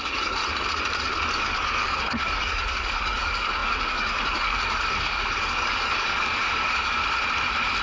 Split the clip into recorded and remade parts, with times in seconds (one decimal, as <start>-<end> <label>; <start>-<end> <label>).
0.0-0.4 remade; 0.4-1.3 recorded; 1.3-7.0 remade; 7.0-7.8 recorded